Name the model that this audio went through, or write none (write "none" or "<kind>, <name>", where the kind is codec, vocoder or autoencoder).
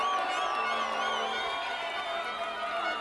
none